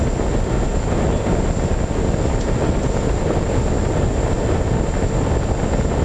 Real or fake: real